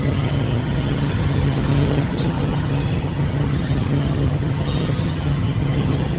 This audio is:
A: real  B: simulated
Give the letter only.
B